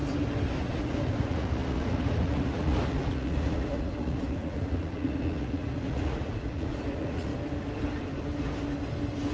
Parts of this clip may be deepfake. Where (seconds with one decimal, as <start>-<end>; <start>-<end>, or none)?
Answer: 0.6-7.3